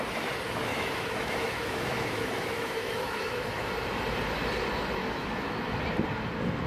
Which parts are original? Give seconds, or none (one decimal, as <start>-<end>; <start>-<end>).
0.0-0.7; 3.7-5.0; 5.8-6.7